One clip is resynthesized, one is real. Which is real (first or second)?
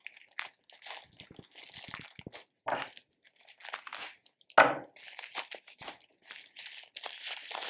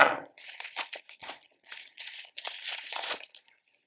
first